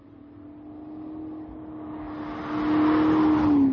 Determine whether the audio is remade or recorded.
recorded